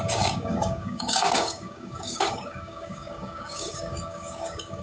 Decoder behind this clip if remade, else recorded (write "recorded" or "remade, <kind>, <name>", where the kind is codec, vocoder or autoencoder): remade, codec, DAC